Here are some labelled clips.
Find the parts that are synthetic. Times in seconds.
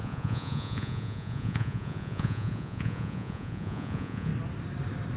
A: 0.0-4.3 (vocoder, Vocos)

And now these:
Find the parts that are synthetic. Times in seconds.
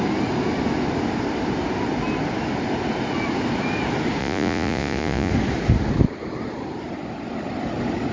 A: 4.2-5.3 (vocoder, Vocos)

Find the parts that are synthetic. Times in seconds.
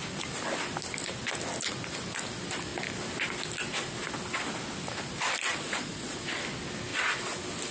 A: 5.5-6.4 (vocoder, Vocos)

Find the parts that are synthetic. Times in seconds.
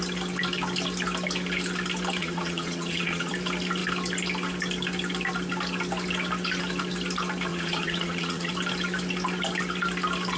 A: 2.2-3.3 (vocoder, Vocos); 7.5-8.5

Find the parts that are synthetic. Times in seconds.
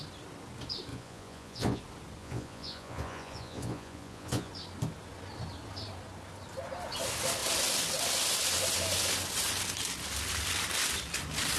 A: 0.9-1.8 (vocoder, Vocos); 2.2-4.5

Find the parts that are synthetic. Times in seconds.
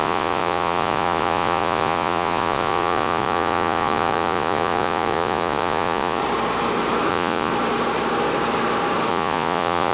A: 0.0-6.2 (vocoder, Vocos); 7.1-7.5; 9.1-9.9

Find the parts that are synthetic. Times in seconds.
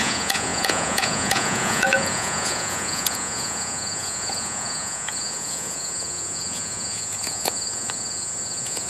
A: 0.0-8.9 (vocoder, Vocos)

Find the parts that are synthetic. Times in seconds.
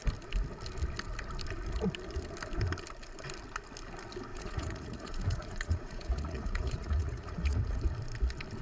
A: 4.3-7.8 (vocoder, Vocos)